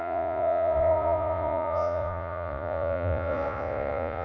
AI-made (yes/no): yes